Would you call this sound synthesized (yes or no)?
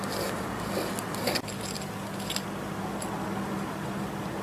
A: no